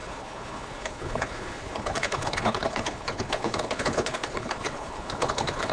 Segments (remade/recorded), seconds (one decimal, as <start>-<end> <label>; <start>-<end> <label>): 0.0-5.7 remade

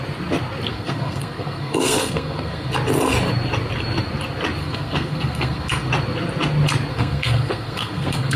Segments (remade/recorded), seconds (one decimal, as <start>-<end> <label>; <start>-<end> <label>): 0.0-0.7 recorded; 0.7-2.7 remade; 2.7-4.6 recorded; 4.6-5.9 remade; 5.9-6.9 recorded; 6.9-8.4 remade

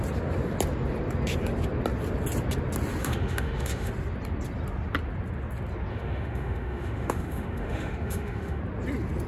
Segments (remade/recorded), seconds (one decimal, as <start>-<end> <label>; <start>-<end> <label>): 0.0-3.0 recorded; 3.0-3.9 remade; 3.9-5.9 recorded; 5.9-8.6 remade; 8.6-9.3 recorded

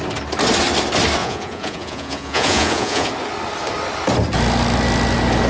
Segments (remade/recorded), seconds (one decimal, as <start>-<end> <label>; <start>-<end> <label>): 0.0-1.2 recorded; 1.2-3.1 remade; 3.1-5.5 recorded

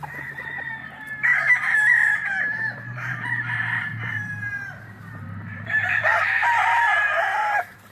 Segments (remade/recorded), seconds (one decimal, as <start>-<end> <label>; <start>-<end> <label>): 0.0-6.4 remade; 6.4-7.4 recorded; 7.4-7.9 remade